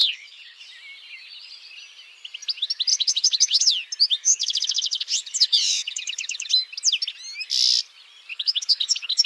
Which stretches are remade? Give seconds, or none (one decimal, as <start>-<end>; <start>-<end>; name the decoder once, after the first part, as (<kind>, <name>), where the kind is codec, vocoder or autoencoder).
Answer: 0.0-0.6 (codec, HILCodec); 2.9-3.7; 4.2-6.5; 8.3-9.3